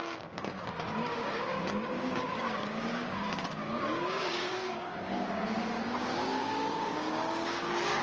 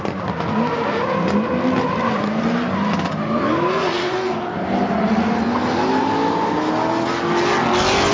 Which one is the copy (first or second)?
first